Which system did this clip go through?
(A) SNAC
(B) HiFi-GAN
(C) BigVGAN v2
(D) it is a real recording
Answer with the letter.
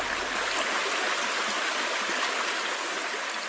D